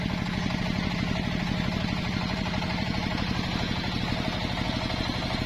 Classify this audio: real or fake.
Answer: real